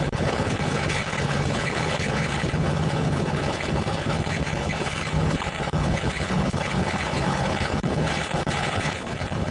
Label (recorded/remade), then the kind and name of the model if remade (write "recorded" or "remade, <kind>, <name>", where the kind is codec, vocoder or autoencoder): remade, codec, HILCodec